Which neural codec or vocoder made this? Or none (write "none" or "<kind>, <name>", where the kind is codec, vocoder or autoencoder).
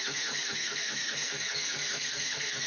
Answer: codec, SNAC